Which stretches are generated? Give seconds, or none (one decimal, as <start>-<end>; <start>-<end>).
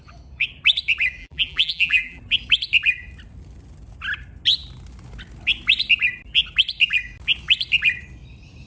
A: 1.2-2.2